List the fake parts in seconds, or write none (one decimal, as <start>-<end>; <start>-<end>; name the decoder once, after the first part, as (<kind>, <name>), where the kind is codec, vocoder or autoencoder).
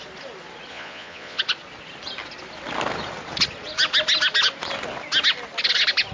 0.7-1.4 (vocoder, Vocos)